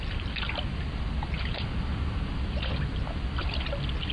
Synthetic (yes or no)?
no